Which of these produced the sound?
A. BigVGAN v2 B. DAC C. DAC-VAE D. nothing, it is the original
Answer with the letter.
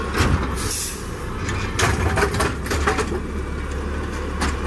D